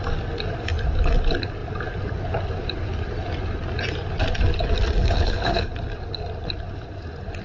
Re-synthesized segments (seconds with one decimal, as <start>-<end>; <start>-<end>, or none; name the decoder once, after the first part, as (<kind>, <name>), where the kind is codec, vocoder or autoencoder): 5.0-5.7 (codec, HILCodec)